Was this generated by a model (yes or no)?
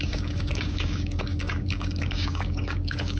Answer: yes